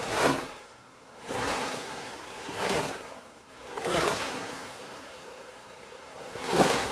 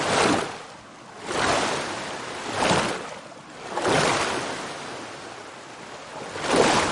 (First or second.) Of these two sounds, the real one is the second